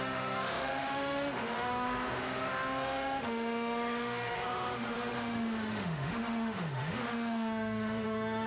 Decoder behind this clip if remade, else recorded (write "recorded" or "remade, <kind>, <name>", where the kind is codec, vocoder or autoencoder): remade, autoencoder, DAC-VAE